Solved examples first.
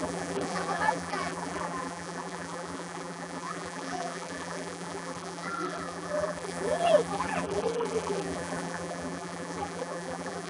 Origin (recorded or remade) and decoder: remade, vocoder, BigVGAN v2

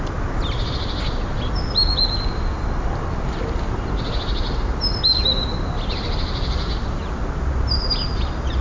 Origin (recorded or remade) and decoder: recorded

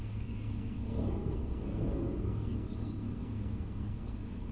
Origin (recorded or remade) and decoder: remade, codec, SNAC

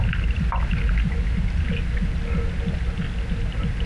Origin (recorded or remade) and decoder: recorded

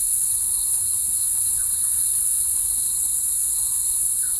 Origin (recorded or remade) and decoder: remade, codec, HILCodec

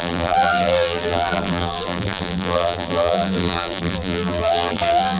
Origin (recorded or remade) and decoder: remade, vocoder, BigVGAN v2